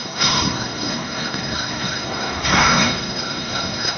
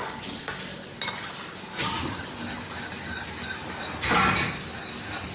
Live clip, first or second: second